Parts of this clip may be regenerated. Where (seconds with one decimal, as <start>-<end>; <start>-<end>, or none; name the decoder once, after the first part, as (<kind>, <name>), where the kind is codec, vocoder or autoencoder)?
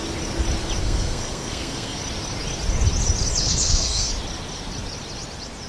0.8-2.0 (codec, SNAC); 3.4-4.1